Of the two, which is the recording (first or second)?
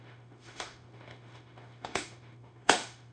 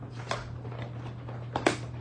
second